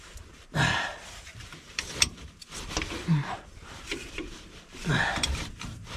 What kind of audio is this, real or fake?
fake